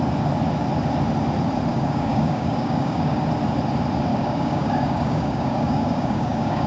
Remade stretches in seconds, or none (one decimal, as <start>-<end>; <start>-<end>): 1.7-3.2; 4.1-6.7